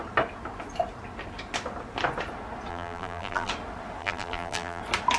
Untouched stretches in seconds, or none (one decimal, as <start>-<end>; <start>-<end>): 0.0-2.7; 3.5-4.0; 4.8-5.2